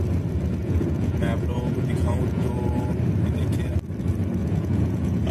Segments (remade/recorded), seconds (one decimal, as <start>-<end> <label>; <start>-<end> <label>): 0.0-0.6 recorded; 0.6-2.6 remade; 2.6-4.4 recorded; 4.4-5.3 remade